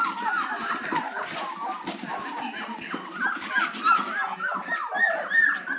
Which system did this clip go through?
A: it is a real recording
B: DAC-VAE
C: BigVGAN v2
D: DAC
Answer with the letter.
A